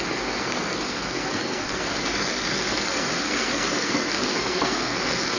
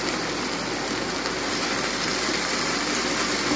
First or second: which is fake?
first